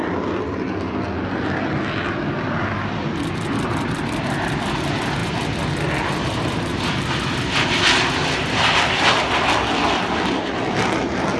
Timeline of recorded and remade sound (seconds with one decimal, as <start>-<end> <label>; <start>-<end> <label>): 0.0-11.4 recorded